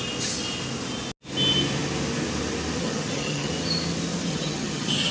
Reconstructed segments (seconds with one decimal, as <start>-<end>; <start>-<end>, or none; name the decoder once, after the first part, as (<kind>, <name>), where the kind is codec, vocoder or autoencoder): 2.8-3.5 (vocoder, HiFi-GAN); 4.3-5.1